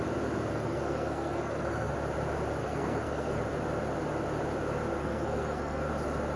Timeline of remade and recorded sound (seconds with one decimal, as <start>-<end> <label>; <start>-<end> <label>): 0.0-0.5 recorded; 0.5-1.9 remade; 1.9-2.6 recorded; 2.6-3.4 remade; 3.4-5.0 recorded; 5.0-5.9 remade; 5.9-6.4 recorded